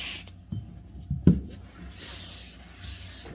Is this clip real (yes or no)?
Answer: yes